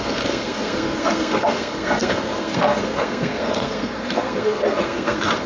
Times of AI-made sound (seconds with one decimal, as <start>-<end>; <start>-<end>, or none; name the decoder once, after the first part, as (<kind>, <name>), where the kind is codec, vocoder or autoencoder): 0.0-5.5 (codec, SNAC)